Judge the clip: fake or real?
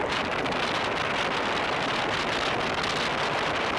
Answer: real